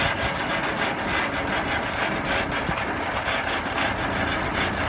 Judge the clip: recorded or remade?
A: recorded